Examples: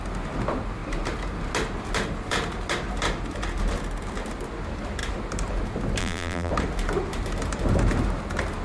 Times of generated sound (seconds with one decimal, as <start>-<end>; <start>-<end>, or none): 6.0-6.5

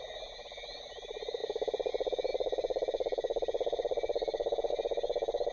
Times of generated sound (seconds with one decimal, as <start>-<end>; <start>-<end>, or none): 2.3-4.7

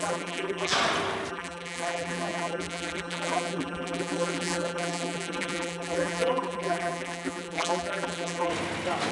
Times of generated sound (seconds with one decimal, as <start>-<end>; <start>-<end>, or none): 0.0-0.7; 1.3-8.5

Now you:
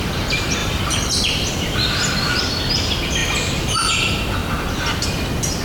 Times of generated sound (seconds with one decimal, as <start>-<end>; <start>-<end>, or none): 0.6-2.4